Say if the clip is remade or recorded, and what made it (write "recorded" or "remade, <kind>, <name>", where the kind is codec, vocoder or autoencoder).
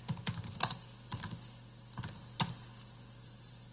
recorded